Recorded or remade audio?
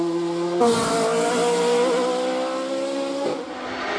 recorded